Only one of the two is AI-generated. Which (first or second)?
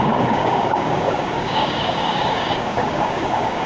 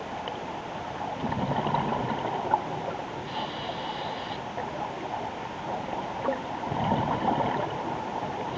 first